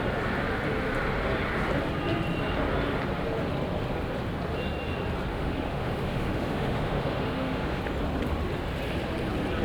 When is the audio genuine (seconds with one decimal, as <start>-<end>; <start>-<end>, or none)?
0.0-5.3; 7.8-9.6